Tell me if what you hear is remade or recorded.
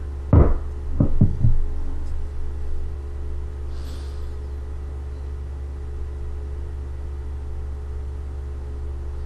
recorded